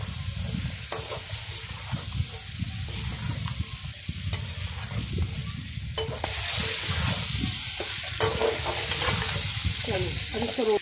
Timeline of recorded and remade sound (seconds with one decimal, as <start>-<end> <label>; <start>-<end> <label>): 0.0-10.8 recorded